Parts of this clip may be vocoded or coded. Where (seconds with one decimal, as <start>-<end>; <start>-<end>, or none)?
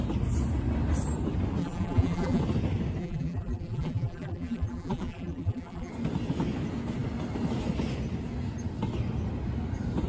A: 1.6-2.4; 3.0-5.9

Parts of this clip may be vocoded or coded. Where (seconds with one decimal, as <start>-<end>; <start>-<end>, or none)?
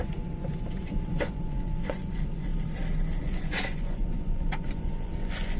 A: 0.0-2.5; 3.2-5.6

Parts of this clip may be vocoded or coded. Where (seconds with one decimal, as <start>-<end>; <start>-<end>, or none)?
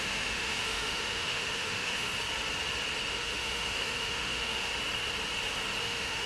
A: 0.0-2.1; 3.1-4.7; 5.8-6.3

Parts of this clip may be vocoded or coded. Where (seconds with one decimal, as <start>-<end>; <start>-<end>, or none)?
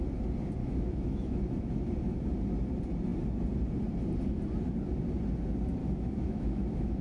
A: 0.6-1.7; 5.8-7.0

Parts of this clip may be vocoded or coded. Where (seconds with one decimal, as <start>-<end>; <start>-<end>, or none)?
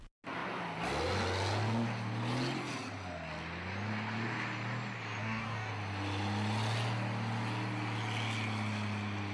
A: 5.2-5.7